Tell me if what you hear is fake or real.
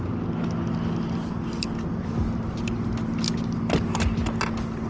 real